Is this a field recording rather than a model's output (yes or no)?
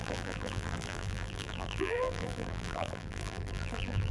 no